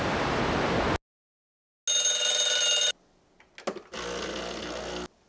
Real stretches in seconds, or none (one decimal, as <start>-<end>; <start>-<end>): 0.0-5.3